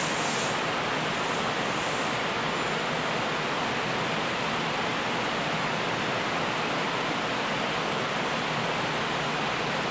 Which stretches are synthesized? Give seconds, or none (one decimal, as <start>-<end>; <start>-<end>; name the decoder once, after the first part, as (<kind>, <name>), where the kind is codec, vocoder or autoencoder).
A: none